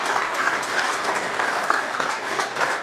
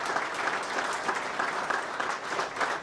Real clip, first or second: second